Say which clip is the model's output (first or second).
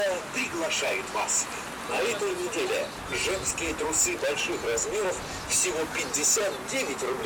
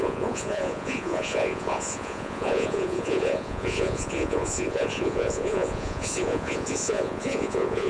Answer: second